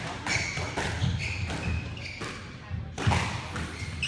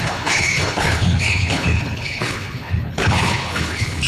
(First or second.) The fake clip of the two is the second